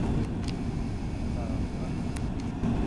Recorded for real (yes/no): yes